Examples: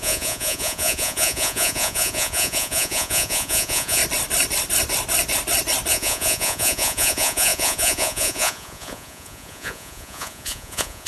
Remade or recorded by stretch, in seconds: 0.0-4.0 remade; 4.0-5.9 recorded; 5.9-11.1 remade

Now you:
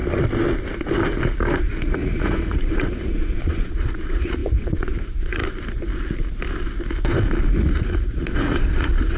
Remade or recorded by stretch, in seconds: 0.0-1.5 recorded; 1.5-5.4 remade; 5.4-7.6 recorded; 7.6-9.2 remade

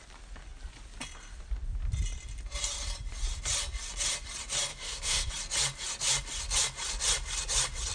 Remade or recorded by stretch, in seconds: 0.0-4.7 recorded; 4.7-5.3 remade; 5.3-7.9 recorded

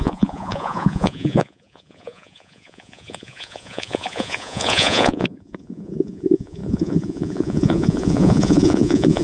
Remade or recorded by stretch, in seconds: 0.0-9.2 remade

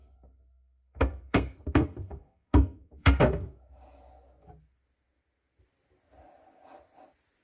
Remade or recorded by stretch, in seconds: 0.0-3.6 remade; 3.6-7.4 recorded

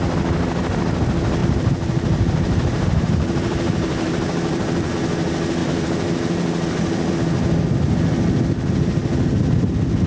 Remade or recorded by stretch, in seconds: 0.0-1.4 recorded; 1.4-4.9 remade; 4.9-5.6 recorded; 5.6-7.1 remade; 7.1-10.1 recorded

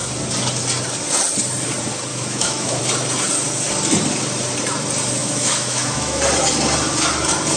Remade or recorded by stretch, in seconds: 0.0-2.1 recorded; 2.1-2.8 remade; 2.8-5.2 recorded; 5.2-6.2 remade; 6.2-7.6 recorded

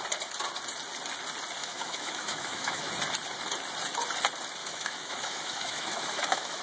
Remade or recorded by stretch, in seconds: 0.0-1.6 recorded; 1.6-2.9 remade; 2.9-4.6 recorded; 4.6-6.6 remade